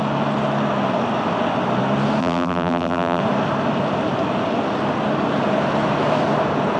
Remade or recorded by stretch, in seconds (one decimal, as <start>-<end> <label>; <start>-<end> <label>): 0.0-2.2 recorded; 2.2-3.2 remade; 3.2-6.8 recorded